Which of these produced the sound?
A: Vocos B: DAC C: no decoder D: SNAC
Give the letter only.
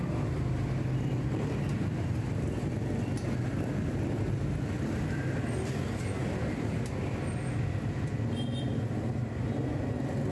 C